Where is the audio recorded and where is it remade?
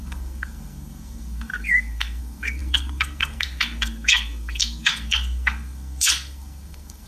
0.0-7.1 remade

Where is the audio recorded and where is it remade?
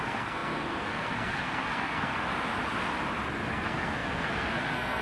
0.0-2.3 remade; 2.3-3.5 recorded; 3.5-5.0 remade